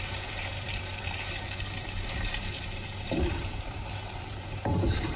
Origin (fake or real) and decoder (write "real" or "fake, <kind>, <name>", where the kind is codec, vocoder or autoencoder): fake, vocoder, BigVGAN v2